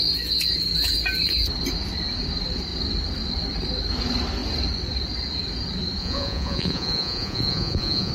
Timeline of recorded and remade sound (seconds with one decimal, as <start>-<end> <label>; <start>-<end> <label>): 0.0-6.0 recorded; 6.0-8.1 remade